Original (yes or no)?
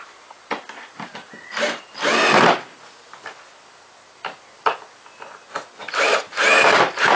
yes